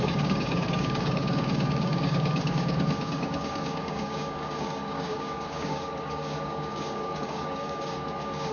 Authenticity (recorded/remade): remade